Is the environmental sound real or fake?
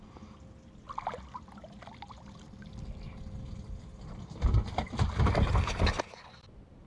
real